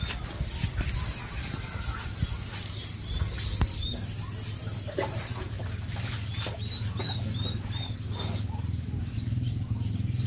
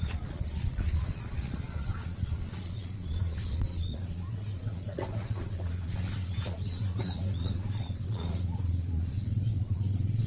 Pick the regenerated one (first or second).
second